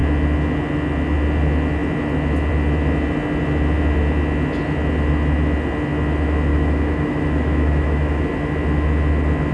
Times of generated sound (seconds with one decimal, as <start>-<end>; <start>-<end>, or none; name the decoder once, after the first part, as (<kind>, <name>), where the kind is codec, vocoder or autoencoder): 6.5-8.2 (autoencoder, DAC-VAE)